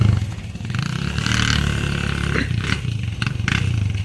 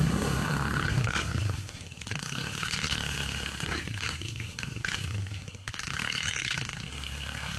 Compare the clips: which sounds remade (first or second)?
second